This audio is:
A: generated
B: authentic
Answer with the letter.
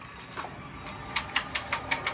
B